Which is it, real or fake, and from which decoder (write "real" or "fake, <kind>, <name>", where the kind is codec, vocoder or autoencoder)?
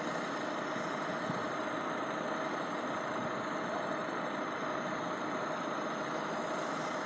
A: real